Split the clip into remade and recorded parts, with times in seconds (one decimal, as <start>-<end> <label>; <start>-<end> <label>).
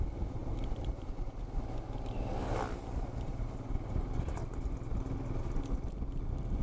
0.0-0.4 recorded; 0.4-1.4 remade; 1.4-6.6 recorded